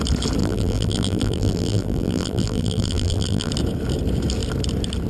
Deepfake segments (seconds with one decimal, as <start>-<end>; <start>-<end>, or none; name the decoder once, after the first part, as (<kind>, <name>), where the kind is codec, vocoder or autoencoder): 0.4-3.5 (vocoder, BigVGAN v2)